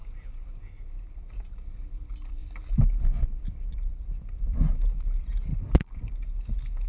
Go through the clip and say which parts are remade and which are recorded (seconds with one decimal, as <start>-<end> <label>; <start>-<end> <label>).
0.0-0.5 remade; 0.5-2.4 recorded; 2.4-6.0 remade; 6.0-6.9 recorded